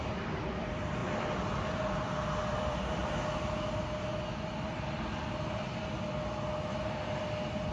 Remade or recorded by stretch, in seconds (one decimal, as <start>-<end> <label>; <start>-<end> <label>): 0.0-1.0 remade; 1.0-1.9 recorded; 1.9-3.0 remade; 3.0-7.7 recorded